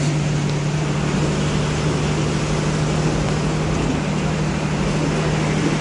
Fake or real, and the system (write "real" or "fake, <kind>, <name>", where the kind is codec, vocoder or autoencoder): real